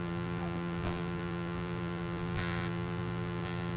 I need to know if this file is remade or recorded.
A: remade